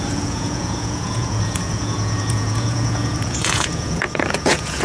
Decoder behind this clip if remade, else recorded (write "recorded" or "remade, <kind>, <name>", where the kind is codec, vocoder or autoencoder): remade, vocoder, Vocos